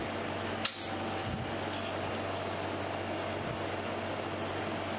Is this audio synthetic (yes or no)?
no